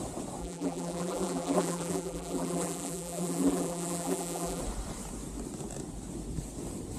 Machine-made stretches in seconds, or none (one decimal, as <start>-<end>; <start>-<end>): 0.4-4.6